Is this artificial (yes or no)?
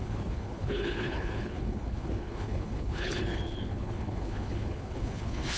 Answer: yes